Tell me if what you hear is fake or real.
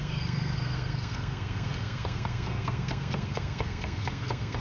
fake